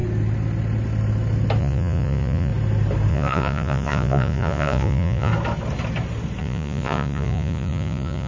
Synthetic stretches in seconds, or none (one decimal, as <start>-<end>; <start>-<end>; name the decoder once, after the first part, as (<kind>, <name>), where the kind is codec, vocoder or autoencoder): 1.6-2.5 (vocoder, Vocos); 3.1-5.3; 6.4-8.3